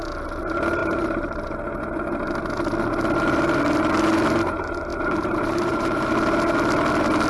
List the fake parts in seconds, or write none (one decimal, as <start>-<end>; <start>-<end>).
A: 0.8-1.6; 4.9-6.1